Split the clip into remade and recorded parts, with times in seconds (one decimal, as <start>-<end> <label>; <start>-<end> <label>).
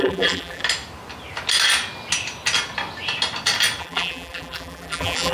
0.0-0.6 remade; 0.6-3.8 recorded; 3.8-5.3 remade